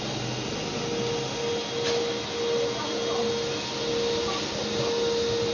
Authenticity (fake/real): real